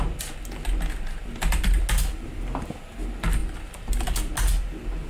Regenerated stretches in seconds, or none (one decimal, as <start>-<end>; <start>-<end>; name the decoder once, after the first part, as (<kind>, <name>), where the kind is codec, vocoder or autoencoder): 1.2-1.8 (vocoder, BigVGAN v2); 3.4-4.2